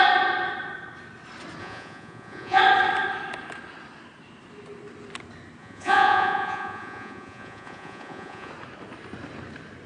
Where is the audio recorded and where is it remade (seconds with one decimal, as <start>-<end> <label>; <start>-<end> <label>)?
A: 0.0-1.6 recorded; 1.6-2.6 remade; 2.6-5.6 recorded; 5.6-8.5 remade; 8.5-9.9 recorded